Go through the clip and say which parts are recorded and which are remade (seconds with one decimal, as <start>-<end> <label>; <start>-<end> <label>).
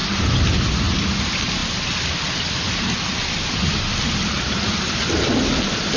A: 0.0-6.0 recorded